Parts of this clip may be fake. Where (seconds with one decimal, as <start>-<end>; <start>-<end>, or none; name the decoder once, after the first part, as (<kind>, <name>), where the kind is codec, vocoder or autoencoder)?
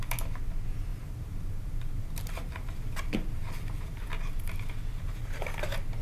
0.9-4.3 (vocoder, BigVGAN v2)